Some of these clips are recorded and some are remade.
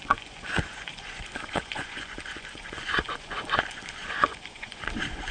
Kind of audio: remade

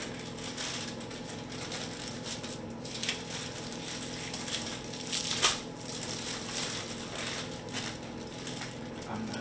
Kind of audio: recorded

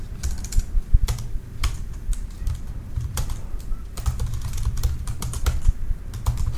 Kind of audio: remade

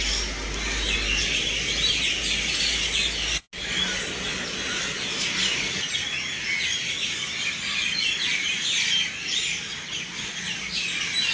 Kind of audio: recorded